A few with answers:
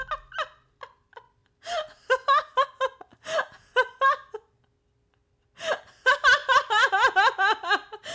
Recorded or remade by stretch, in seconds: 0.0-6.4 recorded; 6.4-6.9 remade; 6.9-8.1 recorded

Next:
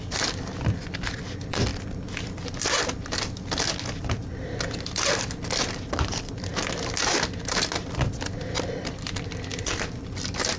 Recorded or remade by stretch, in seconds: 0.0-1.7 remade; 1.7-4.3 recorded; 4.3-6.5 remade; 6.5-8.8 recorded; 8.8-10.6 remade

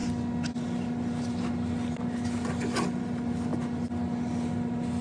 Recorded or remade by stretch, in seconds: 0.0-5.0 recorded